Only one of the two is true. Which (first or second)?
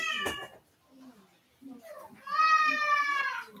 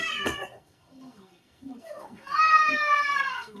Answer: first